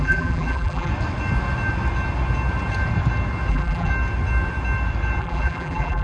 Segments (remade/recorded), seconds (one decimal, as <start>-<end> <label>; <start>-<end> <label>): 0.0-0.9 remade; 0.9-3.5 recorded; 3.5-3.9 remade; 3.9-5.2 recorded; 5.2-6.0 remade